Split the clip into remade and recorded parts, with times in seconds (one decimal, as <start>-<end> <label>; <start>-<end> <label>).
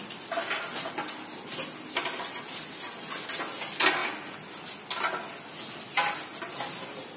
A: 0.0-7.2 recorded